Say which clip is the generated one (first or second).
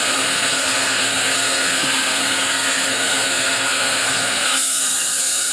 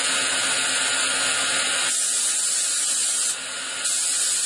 first